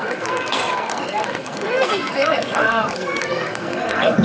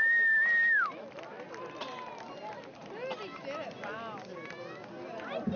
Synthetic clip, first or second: first